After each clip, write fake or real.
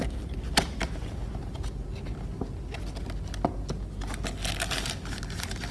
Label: real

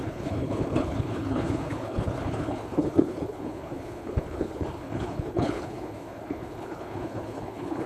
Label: fake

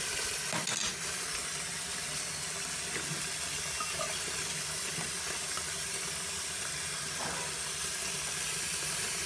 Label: real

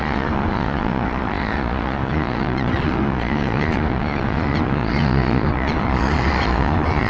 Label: fake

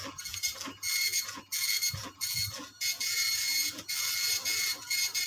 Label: fake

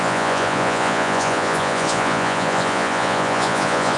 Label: fake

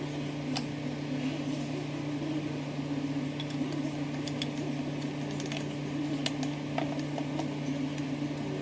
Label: real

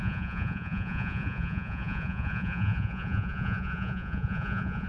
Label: fake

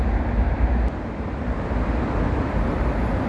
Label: real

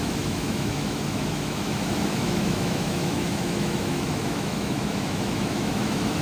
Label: fake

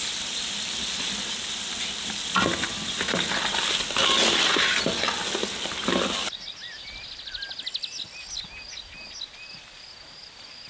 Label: real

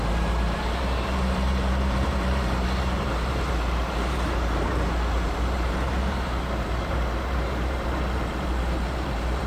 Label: fake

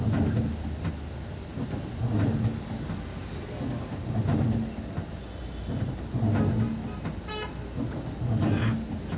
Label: real